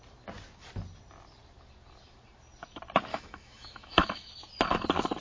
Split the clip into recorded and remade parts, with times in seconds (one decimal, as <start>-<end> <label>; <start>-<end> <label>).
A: 0.0-3.1 recorded; 3.1-4.3 remade; 4.3-5.2 recorded